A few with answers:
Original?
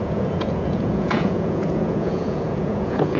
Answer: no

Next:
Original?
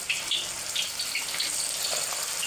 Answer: yes